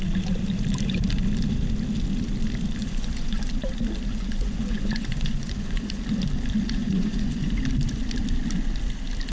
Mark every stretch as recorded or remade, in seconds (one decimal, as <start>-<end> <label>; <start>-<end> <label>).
0.0-2.8 recorded; 2.8-3.5 remade; 3.5-4.1 recorded; 4.1-6.0 remade; 6.0-6.8 recorded; 6.8-7.5 remade; 7.5-9.3 recorded

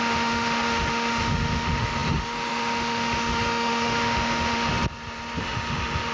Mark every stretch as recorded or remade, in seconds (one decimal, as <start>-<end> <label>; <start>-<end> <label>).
0.0-4.7 remade; 4.7-5.4 recorded; 5.4-6.1 remade